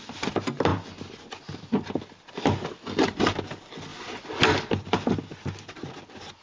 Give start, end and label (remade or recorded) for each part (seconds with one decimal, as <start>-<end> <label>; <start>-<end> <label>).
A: 0.0-6.4 recorded